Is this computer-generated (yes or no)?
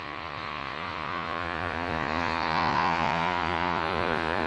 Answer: yes